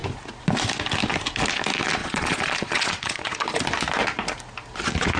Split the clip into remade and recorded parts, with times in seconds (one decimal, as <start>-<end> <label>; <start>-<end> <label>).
0.0-2.0 recorded; 2.0-3.6 remade; 3.6-5.2 recorded